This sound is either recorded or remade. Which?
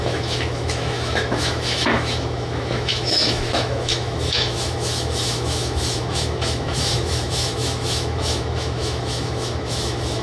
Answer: remade